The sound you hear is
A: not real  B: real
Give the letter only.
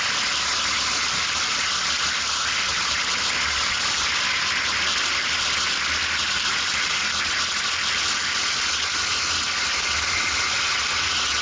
B